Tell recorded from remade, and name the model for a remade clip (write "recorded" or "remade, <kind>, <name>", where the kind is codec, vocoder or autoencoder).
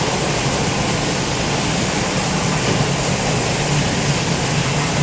recorded